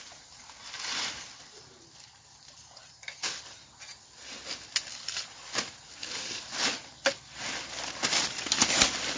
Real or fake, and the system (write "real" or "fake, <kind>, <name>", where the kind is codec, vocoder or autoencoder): real